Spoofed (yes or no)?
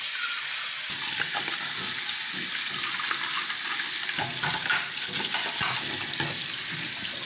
no